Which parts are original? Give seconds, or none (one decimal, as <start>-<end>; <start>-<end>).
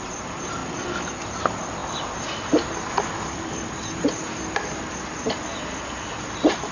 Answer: 0.0-6.7